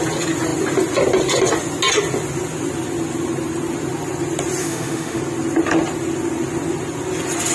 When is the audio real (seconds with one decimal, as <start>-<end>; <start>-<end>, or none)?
0.0-4.6; 5.2-7.5